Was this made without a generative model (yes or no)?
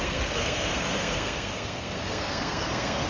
no